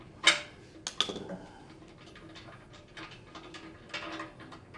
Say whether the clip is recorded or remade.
recorded